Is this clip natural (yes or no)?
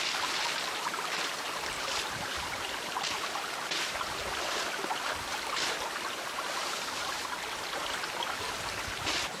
yes